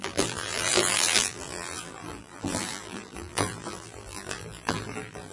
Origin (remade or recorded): remade